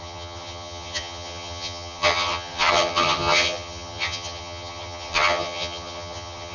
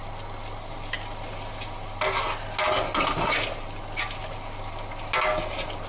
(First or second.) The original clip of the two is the second